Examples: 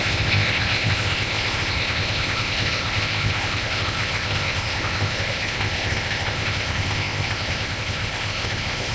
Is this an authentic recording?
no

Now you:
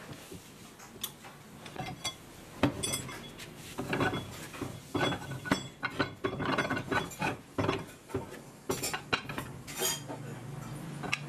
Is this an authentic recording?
yes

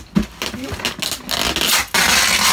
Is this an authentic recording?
yes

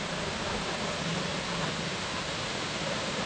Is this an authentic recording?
yes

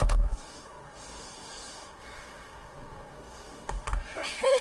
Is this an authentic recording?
no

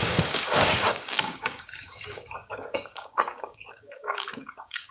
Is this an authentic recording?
no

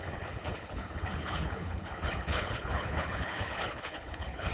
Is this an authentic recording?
no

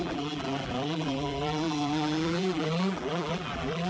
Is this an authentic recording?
no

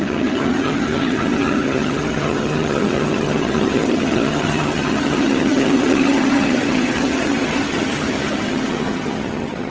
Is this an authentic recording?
no